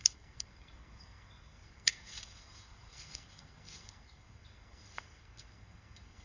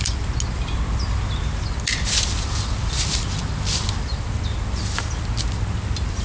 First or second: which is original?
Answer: second